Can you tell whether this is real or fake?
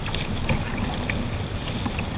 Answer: real